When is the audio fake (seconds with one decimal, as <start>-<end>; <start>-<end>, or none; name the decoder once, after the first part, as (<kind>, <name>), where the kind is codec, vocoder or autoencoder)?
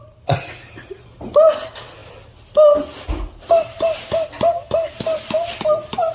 none